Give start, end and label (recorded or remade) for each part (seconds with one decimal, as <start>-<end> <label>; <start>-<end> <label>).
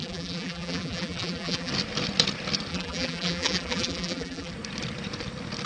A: 0.0-1.7 remade; 1.7-2.7 recorded; 2.7-4.5 remade; 4.5-5.7 recorded